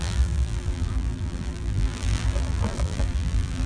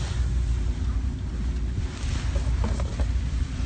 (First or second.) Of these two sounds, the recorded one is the second